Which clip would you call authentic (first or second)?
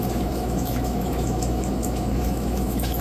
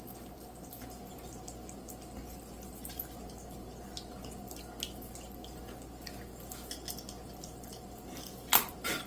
second